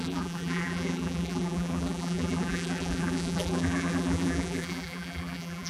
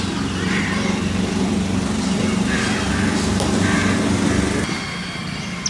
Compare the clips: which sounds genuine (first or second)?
second